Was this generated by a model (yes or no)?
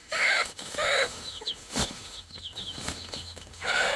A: yes